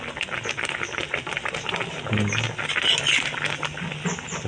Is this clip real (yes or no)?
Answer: yes